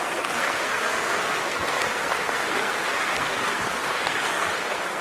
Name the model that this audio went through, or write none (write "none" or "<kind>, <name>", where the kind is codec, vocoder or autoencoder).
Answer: codec, SNAC